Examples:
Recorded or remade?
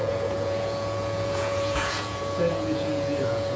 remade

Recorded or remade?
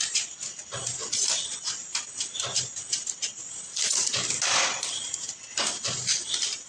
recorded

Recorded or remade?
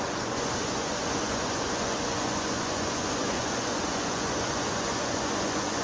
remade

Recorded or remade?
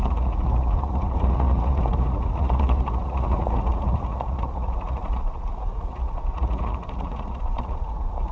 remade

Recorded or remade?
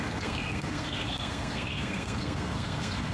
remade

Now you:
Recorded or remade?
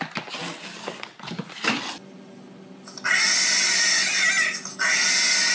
recorded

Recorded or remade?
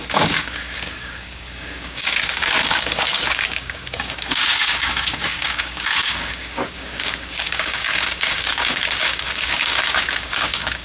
remade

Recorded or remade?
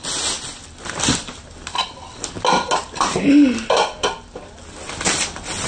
recorded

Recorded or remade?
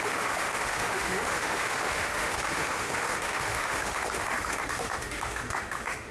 remade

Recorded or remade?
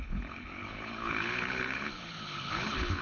remade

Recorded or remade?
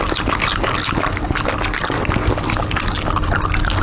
recorded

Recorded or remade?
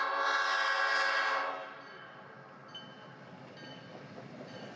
recorded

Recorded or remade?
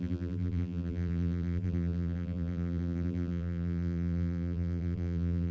remade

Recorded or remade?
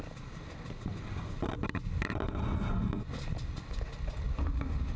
recorded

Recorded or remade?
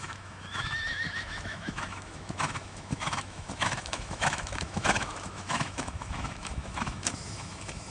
remade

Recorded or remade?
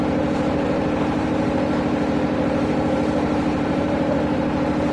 remade